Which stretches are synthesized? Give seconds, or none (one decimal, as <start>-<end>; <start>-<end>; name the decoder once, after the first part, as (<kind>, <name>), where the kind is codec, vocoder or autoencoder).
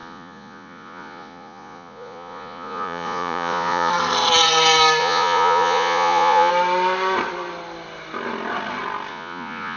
0.0-3.9 (vocoder, Vocos); 5.0-6.5; 9.1-9.8